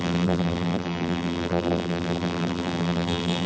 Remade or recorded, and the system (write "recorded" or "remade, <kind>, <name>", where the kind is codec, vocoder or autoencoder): remade, vocoder, BigVGAN v2